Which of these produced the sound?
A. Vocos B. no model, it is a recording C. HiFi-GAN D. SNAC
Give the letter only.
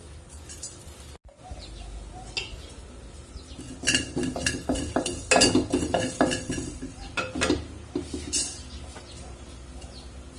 B